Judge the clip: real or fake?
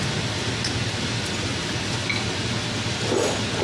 real